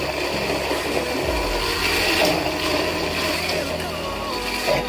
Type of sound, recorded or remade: recorded